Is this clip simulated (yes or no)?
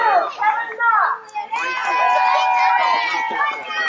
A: no